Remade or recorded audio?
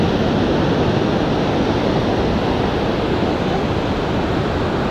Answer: recorded